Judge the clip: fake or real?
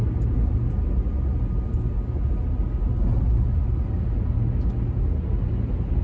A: real